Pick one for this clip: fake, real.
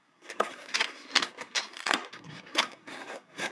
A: fake